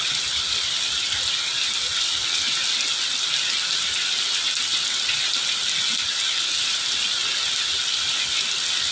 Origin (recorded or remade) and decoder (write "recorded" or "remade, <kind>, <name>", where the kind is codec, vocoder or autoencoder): recorded